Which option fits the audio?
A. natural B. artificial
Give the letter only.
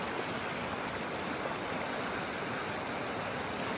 A